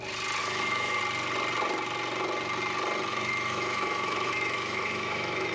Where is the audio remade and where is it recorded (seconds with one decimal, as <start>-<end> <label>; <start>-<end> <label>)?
0.0-0.4 recorded; 0.4-1.0 remade; 1.0-3.1 recorded; 3.1-5.5 remade